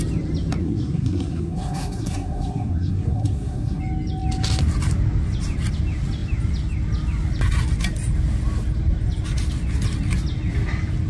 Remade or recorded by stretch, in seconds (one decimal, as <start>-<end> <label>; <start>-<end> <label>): 0.0-0.6 recorded; 0.6-3.8 remade; 3.8-11.1 recorded